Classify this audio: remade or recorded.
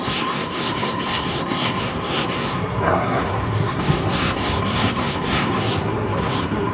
remade